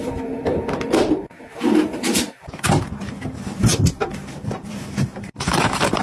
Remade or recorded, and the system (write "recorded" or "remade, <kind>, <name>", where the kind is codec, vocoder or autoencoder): remade, vocoder, BigVGAN v2